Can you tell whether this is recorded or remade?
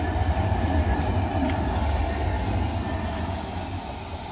recorded